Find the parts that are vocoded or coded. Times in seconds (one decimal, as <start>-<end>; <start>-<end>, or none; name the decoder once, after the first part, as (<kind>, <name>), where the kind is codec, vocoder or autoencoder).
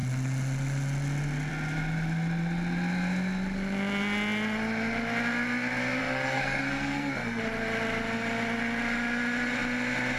6.0-7.4 (codec, SNAC)